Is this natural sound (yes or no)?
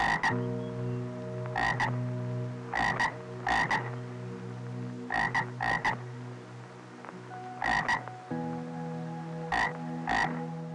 yes